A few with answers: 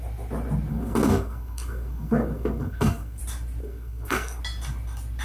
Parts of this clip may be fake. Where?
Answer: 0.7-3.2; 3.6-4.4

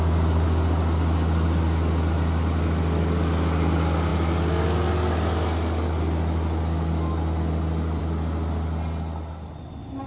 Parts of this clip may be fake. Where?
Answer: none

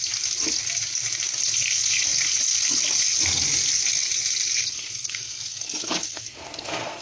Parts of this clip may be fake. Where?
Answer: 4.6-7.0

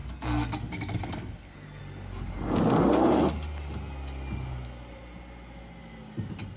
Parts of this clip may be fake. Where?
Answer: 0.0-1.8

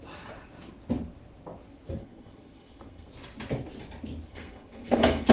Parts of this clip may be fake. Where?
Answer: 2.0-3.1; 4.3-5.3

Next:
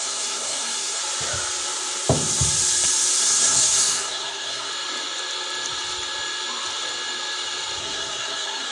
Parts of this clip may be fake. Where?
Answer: 0.0-1.0; 3.2-4.7; 7.8-8.7

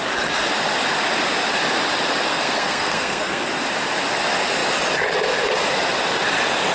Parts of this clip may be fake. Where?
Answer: 2.3-3.4